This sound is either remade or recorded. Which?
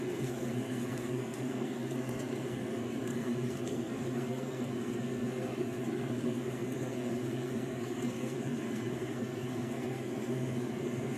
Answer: remade